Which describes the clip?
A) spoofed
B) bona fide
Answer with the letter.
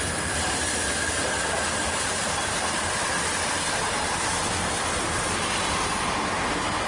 B